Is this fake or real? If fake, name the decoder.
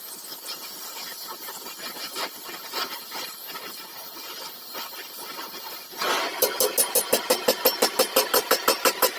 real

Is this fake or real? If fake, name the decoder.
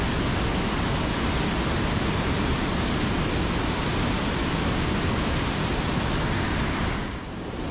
real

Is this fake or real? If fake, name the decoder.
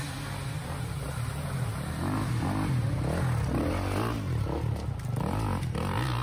real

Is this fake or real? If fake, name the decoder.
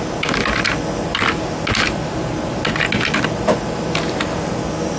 real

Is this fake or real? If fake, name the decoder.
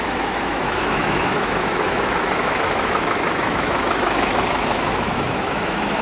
fake, autoencoder, DAC-VAE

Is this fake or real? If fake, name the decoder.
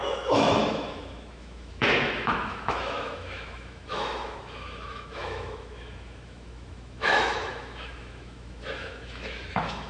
fake, autoencoder, DAC-VAE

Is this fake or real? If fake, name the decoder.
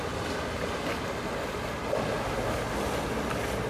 real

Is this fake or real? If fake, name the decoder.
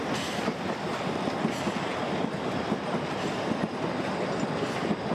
real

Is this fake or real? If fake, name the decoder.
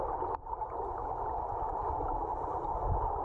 real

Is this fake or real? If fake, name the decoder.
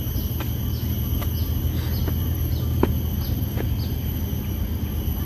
real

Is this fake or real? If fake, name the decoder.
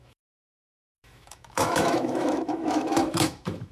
fake, autoencoder, DAC-VAE